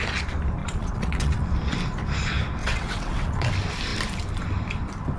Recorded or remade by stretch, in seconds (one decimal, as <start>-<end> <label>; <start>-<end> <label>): 0.0-0.6 recorded; 0.6-1.4 remade; 1.4-2.6 recorded; 2.6-3.5 remade; 3.5-5.2 recorded

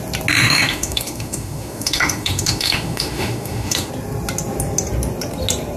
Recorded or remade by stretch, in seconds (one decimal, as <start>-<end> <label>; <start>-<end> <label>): 0.0-0.4 recorded; 0.4-3.9 remade; 3.9-5.8 recorded

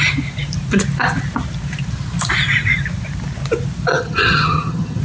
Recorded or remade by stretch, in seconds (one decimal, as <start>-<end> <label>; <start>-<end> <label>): 0.0-3.9 recorded; 3.9-5.0 remade

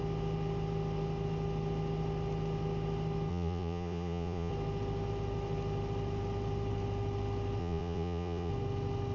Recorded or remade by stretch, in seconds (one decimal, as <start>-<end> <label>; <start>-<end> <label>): 0.0-3.3 recorded; 3.3-4.5 remade; 4.5-7.6 recorded; 7.6-8.5 remade; 8.5-9.1 recorded

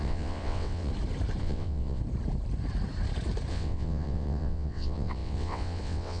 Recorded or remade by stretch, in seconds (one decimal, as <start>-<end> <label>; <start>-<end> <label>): 0.0-0.9 remade; 0.9-1.4 recorded; 1.4-2.0 remade; 2.0-3.5 recorded; 3.5-6.2 remade